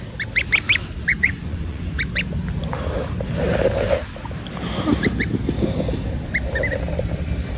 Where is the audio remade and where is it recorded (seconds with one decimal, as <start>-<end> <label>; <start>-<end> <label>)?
0.0-1.1 recorded; 1.1-2.0 remade; 2.0-7.6 recorded